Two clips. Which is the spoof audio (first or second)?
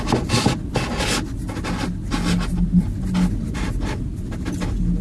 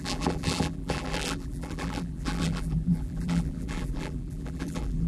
second